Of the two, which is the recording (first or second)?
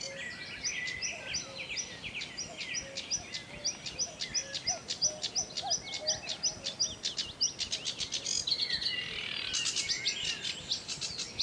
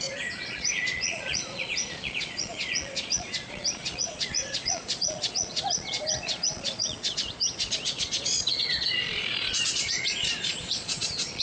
first